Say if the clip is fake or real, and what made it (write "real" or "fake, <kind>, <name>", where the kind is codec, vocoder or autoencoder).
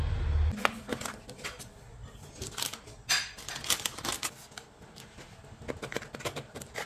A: real